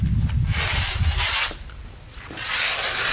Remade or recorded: recorded